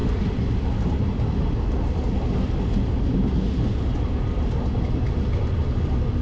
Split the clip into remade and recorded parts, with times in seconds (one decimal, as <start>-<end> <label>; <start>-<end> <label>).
0.0-6.2 recorded